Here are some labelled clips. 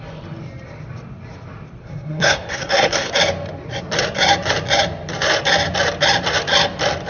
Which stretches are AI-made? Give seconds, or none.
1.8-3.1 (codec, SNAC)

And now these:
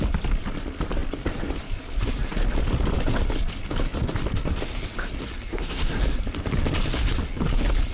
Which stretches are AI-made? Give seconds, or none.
5.5-6.0 (codec, SNAC)

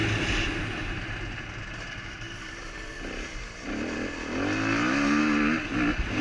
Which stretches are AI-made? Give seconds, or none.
none

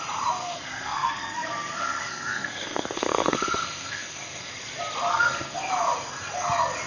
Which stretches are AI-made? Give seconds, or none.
0.4-4.5 (codec, SNAC); 5.1-5.7

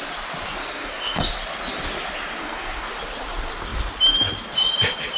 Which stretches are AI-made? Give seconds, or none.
0.6-1.3 (codec, SNAC); 2.4-2.9

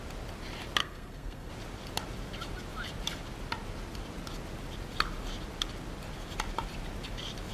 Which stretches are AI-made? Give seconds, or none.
0.8-1.5 (codec, SNAC)